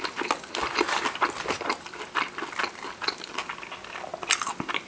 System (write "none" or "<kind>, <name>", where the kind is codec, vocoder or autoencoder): none